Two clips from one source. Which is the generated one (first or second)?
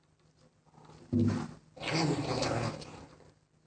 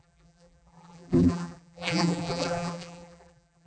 second